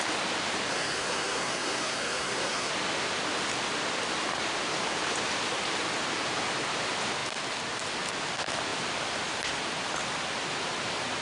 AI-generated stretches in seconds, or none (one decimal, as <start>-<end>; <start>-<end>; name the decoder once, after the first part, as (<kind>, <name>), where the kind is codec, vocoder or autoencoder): 0.7-2.7 (codec, SNAC)